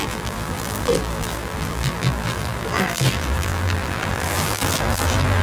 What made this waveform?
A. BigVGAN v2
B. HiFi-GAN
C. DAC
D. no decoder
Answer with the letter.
A